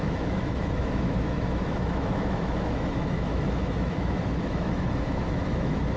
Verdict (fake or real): fake